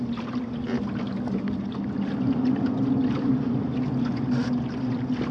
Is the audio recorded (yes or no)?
yes